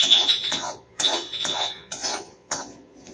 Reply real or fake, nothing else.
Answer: fake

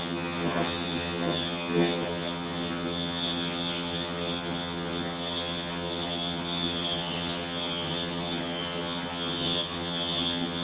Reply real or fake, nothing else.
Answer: fake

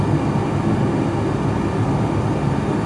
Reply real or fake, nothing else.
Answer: real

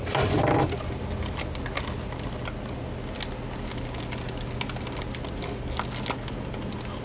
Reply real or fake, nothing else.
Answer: real